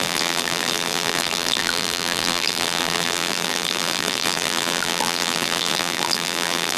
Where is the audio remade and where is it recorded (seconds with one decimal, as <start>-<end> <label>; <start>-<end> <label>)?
0.0-6.8 remade